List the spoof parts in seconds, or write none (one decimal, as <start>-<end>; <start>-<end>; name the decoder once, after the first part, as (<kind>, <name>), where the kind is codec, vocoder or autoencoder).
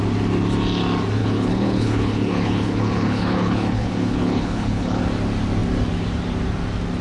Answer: 1.2-5.0 (codec, HILCodec)